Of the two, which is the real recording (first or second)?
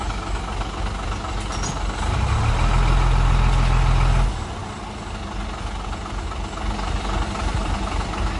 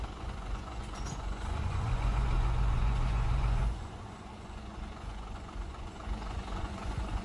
first